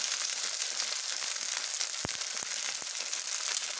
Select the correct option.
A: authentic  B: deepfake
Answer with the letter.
A